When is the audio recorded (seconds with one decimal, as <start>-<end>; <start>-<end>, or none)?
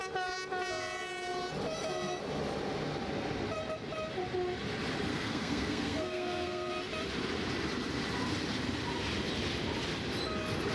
0.0-5.1; 6.7-10.7